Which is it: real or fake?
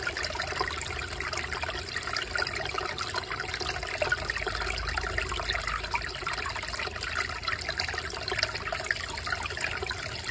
real